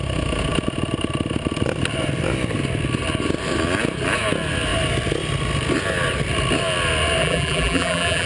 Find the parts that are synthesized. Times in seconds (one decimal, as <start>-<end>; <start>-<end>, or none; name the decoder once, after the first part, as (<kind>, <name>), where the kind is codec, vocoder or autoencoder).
7.2-8.3 (vocoder, BigVGAN v2)